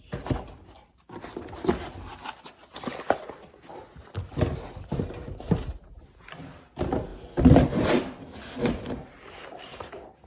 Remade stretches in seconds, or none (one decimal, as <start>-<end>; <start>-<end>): 7.1-8.6